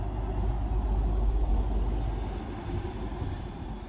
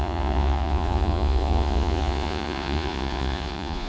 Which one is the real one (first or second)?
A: first